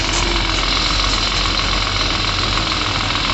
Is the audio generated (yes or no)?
no